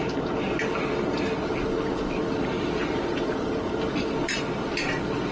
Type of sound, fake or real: real